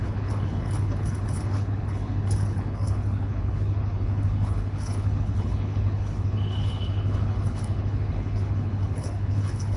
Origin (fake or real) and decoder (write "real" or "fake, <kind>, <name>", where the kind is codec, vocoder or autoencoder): fake, codec, HILCodec